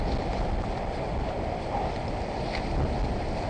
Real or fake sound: real